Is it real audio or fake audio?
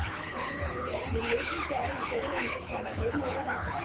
fake